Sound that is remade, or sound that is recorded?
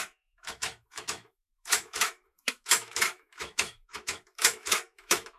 remade